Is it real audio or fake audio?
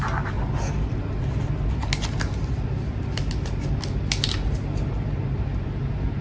real